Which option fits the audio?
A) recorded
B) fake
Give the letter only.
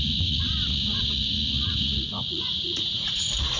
B